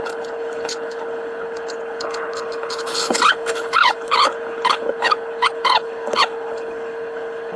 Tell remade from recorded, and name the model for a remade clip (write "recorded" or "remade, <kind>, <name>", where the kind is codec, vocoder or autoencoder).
remade, codec, HILCodec